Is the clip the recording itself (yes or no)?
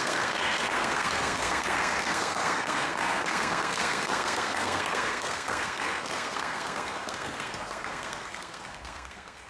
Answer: no